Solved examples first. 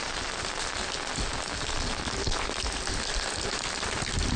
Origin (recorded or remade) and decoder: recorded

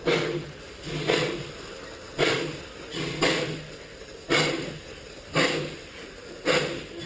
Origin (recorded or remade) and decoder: recorded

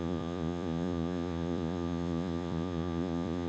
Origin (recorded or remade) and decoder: remade, vocoder, Vocos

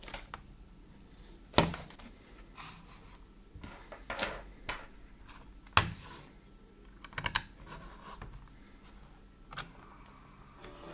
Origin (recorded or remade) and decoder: recorded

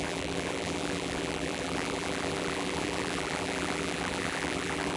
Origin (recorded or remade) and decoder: remade, vocoder, BigVGAN v2